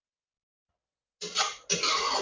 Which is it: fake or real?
real